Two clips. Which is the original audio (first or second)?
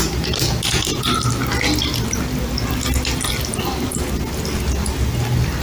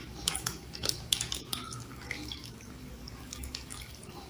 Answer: first